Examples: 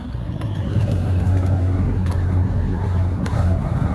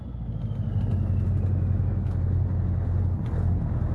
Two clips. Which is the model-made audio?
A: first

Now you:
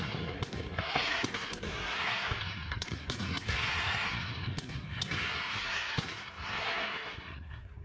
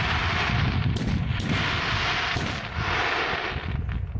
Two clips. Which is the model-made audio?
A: first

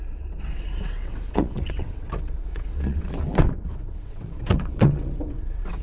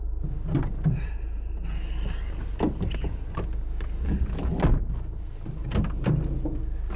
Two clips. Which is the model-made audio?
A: first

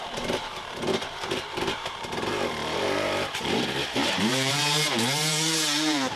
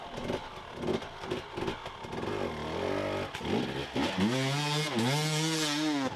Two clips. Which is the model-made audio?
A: first